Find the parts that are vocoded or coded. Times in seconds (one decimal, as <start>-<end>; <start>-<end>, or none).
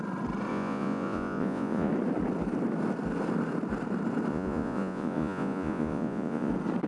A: 0.5-1.9; 4.3-6.5